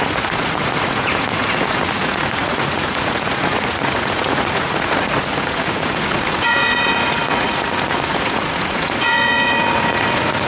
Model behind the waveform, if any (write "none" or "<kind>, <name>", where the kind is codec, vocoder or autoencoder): vocoder, Vocos